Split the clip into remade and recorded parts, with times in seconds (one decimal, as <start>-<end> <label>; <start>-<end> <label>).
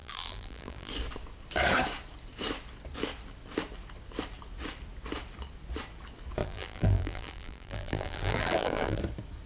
0.0-0.9 remade; 0.9-6.4 recorded; 6.4-9.0 remade; 9.0-9.5 recorded